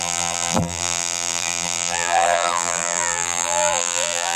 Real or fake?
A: fake